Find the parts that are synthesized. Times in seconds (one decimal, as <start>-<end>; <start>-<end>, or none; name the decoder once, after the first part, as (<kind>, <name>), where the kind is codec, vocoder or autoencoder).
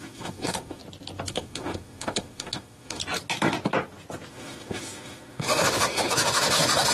0.0-0.8 (autoencoder, DAC-VAE); 1.3-3.0; 4.3-6.9